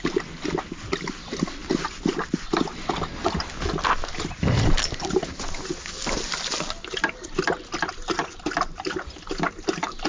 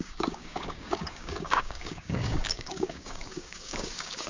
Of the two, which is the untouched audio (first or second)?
first